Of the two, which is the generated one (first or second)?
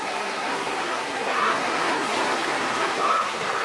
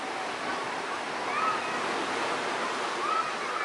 first